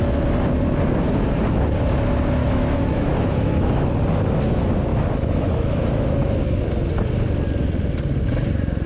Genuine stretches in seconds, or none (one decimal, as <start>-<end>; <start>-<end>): 0.0-2.4; 3.9-4.9; 6.4-8.9